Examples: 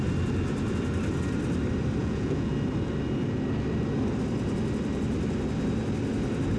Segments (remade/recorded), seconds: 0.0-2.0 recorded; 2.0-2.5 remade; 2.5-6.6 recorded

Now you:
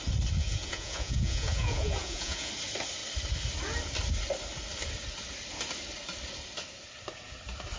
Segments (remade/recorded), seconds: 0.0-0.4 recorded; 0.4-2.5 remade; 2.5-7.8 recorded

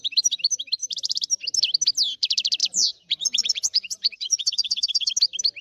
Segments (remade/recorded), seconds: 0.0-2.6 recorded; 2.6-5.1 remade; 5.1-5.6 recorded

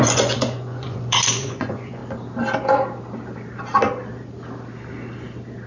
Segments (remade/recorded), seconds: 0.0-2.0 remade; 2.0-5.7 recorded

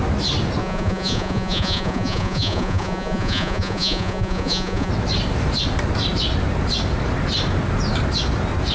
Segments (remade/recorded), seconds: 0.0-0.6 recorded; 0.6-4.9 remade; 4.9-8.7 recorded

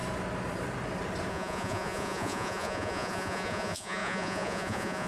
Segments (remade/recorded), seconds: 0.0-1.3 recorded; 1.3-5.1 remade

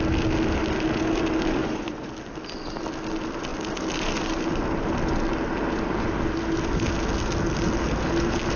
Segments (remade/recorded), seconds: 0.0-1.6 recorded; 1.6-2.1 remade; 2.1-8.6 recorded

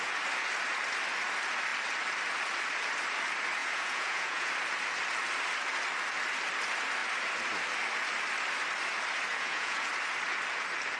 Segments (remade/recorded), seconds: 0.0-3.6 recorded; 3.6-4.5 remade; 4.5-9.3 recorded; 9.3-9.9 remade; 9.9-11.0 recorded